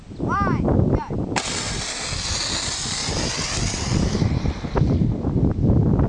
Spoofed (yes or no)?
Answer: no